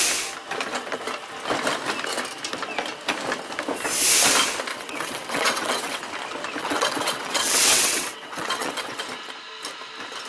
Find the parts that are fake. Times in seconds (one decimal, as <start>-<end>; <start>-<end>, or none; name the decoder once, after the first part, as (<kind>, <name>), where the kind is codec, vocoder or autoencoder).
4.7-6.0 (vocoder, WaveNeXt); 6.6-9.0